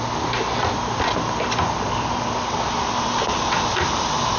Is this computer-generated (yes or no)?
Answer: no